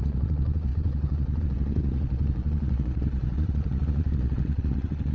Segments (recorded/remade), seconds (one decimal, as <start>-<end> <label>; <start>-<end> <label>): 0.0-5.1 remade